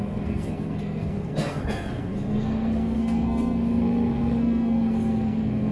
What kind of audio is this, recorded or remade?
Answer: remade